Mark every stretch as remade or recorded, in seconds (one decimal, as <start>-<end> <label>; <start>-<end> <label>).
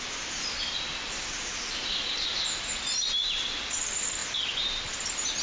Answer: 0.0-5.4 recorded